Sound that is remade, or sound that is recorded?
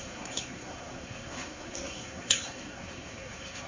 remade